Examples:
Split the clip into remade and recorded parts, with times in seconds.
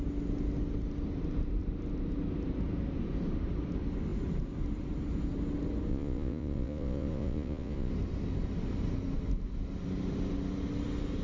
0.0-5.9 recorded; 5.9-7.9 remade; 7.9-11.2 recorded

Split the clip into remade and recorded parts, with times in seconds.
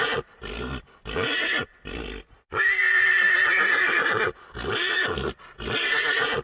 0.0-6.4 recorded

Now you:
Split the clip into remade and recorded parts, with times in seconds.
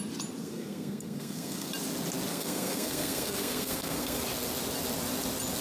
0.0-0.4 recorded; 0.4-1.7 remade; 1.7-2.3 recorded; 2.3-4.2 remade; 4.2-5.6 recorded